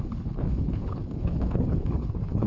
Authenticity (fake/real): fake